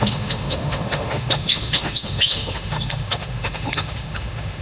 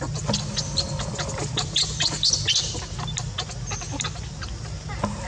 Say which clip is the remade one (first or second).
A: first